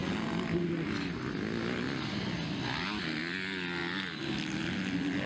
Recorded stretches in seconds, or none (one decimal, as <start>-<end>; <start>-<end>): 0.0-5.3